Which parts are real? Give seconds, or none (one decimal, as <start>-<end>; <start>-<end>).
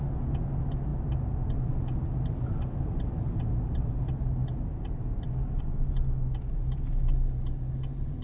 0.0-8.2